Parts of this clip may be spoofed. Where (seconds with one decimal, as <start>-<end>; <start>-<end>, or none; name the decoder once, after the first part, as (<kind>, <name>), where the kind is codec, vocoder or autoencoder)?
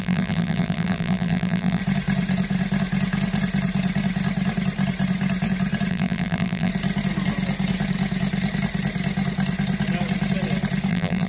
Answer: 0.0-1.8 (vocoder, BigVGAN v2); 5.9-6.7; 10.9-11.3